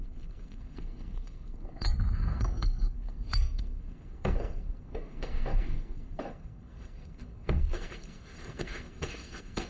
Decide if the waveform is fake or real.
fake